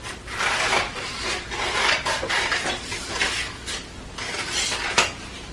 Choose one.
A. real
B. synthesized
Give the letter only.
B